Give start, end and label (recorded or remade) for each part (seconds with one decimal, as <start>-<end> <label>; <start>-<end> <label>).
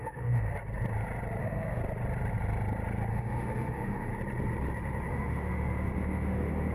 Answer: 0.0-0.5 remade; 0.5-1.4 recorded; 1.4-1.8 remade; 1.8-3.1 recorded; 3.1-4.1 remade; 4.1-5.1 recorded; 5.1-6.7 remade